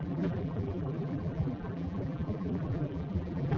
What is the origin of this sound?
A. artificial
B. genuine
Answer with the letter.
A